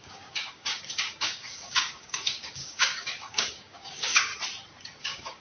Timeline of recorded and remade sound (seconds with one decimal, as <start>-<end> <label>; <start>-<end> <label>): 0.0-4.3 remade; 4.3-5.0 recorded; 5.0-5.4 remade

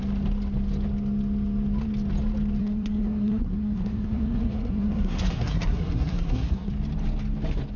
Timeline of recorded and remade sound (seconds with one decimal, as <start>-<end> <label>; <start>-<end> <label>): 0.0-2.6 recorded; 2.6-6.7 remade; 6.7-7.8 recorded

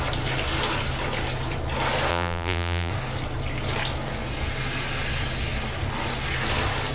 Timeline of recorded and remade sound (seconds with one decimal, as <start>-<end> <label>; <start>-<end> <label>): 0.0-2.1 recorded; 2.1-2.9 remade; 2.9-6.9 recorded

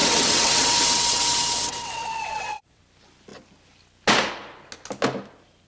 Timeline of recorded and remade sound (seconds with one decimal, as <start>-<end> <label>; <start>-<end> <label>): 0.0-2.8 remade; 2.8-5.7 recorded

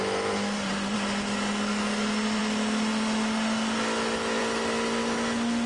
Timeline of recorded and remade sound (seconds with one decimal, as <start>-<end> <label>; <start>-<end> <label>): 0.0-5.7 recorded

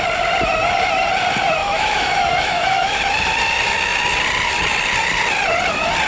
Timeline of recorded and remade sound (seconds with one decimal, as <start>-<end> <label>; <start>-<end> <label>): 0.0-1.6 recorded; 1.6-3.0 remade; 3.0-6.1 recorded

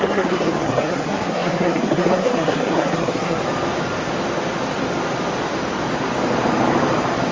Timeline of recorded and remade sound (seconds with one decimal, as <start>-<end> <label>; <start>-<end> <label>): 0.0-3.4 remade; 3.4-7.3 recorded